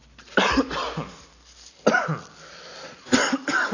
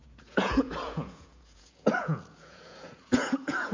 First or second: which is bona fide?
first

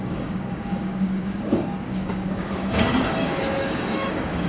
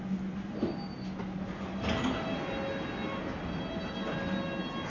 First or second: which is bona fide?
second